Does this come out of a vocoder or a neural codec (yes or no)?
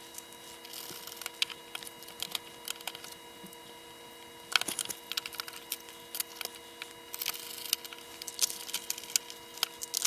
no